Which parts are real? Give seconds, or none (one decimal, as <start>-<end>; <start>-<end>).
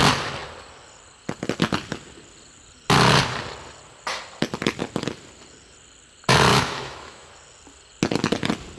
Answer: 0.0-6.5; 7.3-8.8